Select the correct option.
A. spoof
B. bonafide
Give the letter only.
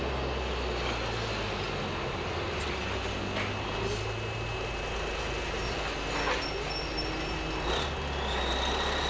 B